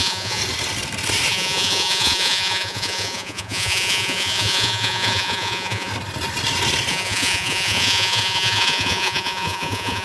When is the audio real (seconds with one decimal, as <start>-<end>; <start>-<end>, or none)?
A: 0.4-1.3; 5.9-6.9